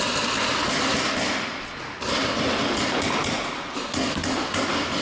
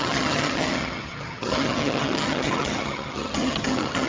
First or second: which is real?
first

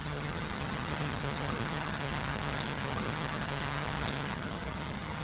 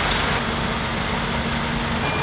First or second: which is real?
second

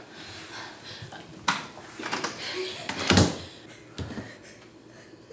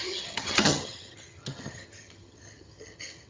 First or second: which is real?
first